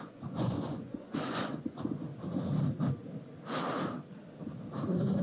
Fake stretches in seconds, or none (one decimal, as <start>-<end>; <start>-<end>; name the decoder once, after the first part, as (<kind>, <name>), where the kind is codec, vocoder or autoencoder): 0.0-2.1 (vocoder, Vocos)